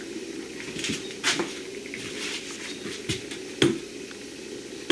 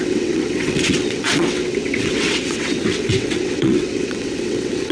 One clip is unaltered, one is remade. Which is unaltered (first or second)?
first